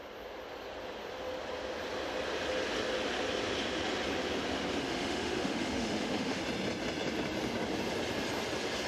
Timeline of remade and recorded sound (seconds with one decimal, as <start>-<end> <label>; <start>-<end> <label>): 0.0-4.8 recorded; 4.8-6.4 remade; 6.4-8.9 recorded

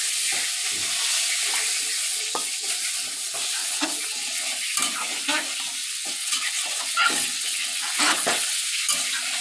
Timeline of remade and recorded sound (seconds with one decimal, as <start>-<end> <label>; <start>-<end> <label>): 0.0-2.1 recorded; 2.1-2.7 remade; 2.7-3.6 recorded; 3.6-4.5 remade; 4.5-5.8 recorded; 5.8-8.6 remade; 8.6-9.4 recorded

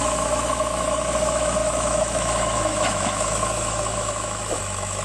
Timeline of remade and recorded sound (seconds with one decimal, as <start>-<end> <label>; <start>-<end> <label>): 0.0-5.0 remade

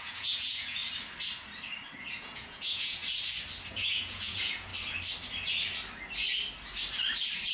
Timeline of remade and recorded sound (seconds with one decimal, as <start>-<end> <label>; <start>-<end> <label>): 0.0-0.8 remade; 0.8-2.1 recorded; 2.1-3.0 remade; 3.0-3.7 recorded; 3.7-4.7 remade; 4.7-7.5 recorded

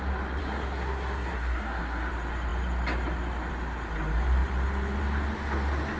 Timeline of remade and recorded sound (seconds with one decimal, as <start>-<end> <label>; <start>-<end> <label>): 0.0-0.4 recorded; 0.4-2.1 remade; 2.1-6.0 recorded

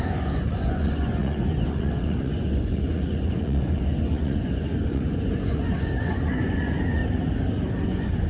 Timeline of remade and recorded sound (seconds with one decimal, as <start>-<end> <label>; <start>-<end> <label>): 0.0-7.0 remade; 7.0-7.8 recorded; 7.8-8.3 remade

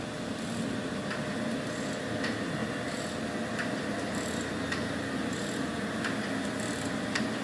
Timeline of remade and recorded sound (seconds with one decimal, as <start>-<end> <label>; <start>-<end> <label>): 0.0-7.4 recorded

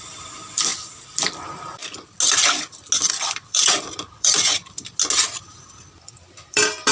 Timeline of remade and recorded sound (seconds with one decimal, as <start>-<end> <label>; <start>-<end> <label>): 0.0-0.7 remade; 0.7-1.3 recorded; 1.3-1.8 remade; 1.8-3.1 recorded; 3.1-4.6 remade; 4.6-5.9 recorded; 5.9-6.9 remade